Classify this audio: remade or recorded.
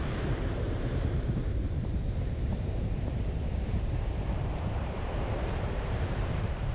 remade